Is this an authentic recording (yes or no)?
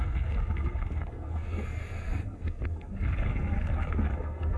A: no